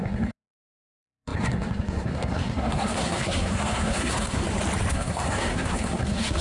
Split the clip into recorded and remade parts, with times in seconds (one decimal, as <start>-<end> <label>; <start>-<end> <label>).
0.0-4.4 remade; 4.4-4.9 recorded; 4.9-6.4 remade

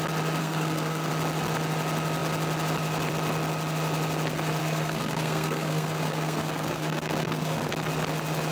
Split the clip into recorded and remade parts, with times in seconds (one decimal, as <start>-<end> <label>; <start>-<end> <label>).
0.0-0.4 recorded; 0.4-1.1 remade; 1.1-4.6 recorded; 4.6-7.7 remade; 7.7-8.5 recorded

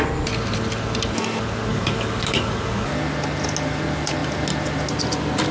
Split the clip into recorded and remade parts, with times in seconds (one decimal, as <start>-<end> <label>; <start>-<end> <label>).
0.0-1.7 recorded; 1.7-2.9 remade; 2.9-5.5 recorded

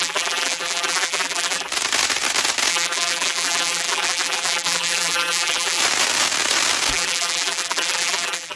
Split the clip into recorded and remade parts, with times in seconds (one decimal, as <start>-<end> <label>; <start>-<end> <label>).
0.0-1.7 remade; 1.7-2.7 recorded; 2.7-5.8 remade; 5.8-6.9 recorded; 6.9-8.6 remade

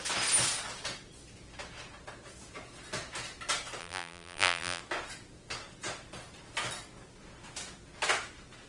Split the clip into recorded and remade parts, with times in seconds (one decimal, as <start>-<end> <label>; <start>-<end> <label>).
0.0-3.8 recorded; 3.8-4.8 remade; 4.8-8.7 recorded

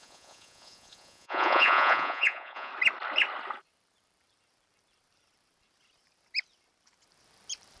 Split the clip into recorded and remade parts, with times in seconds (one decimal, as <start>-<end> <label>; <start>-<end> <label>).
0.0-2.7 remade; 2.7-7.8 recorded

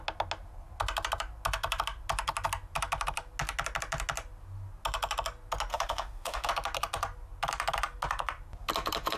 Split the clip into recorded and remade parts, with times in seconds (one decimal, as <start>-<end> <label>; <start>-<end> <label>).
0.0-5.7 recorded; 5.7-6.5 remade; 6.5-9.2 recorded